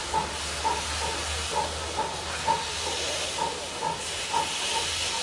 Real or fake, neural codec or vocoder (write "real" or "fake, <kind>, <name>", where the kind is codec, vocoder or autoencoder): real